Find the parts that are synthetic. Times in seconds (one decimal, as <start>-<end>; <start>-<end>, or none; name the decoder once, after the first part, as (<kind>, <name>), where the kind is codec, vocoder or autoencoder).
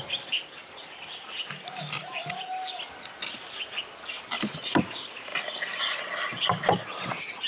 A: 5.3-6.3 (vocoder, BigVGAN v2)